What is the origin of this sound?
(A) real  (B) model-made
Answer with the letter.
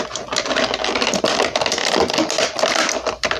A